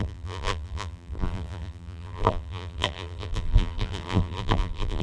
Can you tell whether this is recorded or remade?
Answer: remade